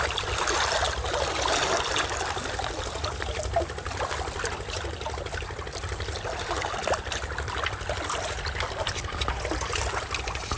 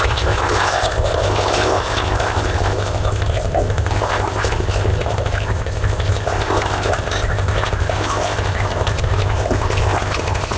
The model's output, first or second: second